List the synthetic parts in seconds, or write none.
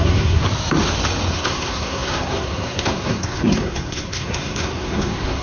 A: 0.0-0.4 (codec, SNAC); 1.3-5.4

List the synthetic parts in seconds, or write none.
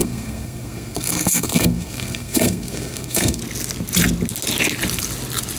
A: 0.0-3.4 (codec, SNAC)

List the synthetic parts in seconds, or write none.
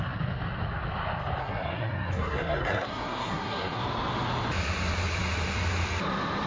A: 1.4-3.8 (codec, SNAC)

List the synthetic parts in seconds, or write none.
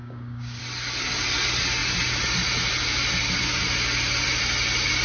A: 0.0-0.6 (codec, DAC)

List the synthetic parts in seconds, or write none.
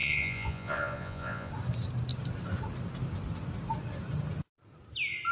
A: 0.0-1.5 (vocoder, Vocos)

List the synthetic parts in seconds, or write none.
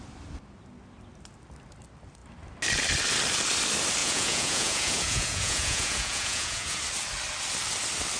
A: 4.0-6.8 (vocoder, Vocos)